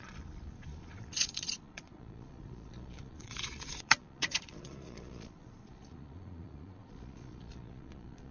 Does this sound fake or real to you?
fake